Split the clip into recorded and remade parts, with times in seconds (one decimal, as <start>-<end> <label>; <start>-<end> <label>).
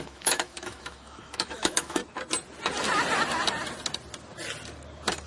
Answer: 0.0-2.0 remade; 2.0-5.3 recorded